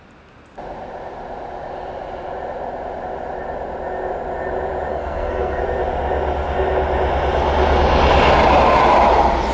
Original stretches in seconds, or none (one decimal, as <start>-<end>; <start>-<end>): 0.0-4.9; 5.6-9.5